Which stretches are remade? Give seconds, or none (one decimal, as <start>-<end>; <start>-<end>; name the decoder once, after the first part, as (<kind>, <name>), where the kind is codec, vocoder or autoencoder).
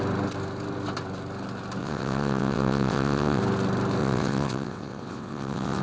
1.8-3.4 (vocoder, WaveNeXt); 4.0-5.8